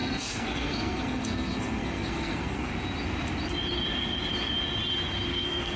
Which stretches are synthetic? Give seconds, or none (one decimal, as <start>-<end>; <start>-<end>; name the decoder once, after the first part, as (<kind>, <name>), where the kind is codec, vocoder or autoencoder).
0.0-2.7 (codec, SNAC); 5.3-5.8

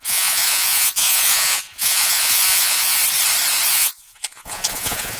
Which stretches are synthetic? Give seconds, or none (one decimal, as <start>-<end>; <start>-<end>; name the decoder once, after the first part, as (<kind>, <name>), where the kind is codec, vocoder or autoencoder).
0.0-3.0 (vocoder, Vocos); 3.7-5.2

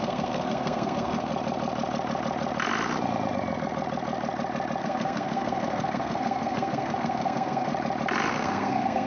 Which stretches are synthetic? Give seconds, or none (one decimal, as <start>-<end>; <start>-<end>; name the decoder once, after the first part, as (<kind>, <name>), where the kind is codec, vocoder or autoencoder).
0.0-1.3 (codec, SNAC); 4.8-7.7; 8.3-9.1

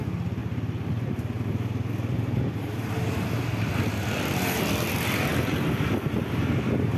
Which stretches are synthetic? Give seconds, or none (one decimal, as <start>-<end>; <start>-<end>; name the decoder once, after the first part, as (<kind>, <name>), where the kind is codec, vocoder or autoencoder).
none

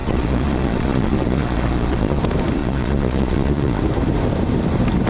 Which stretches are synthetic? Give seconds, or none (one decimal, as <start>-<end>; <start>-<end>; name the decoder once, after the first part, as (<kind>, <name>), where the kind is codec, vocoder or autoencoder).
0.0-2.2 (vocoder, Vocos); 2.6-3.8